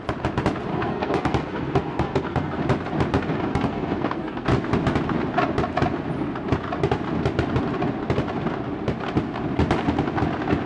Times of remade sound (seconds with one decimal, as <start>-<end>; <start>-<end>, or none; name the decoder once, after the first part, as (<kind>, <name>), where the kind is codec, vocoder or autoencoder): 0.7-2.6 (codec, SNAC); 3.3-4.6